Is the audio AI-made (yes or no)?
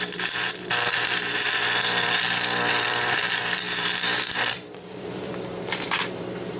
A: yes